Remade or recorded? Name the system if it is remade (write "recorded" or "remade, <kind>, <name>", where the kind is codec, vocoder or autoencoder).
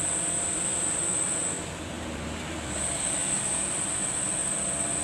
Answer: recorded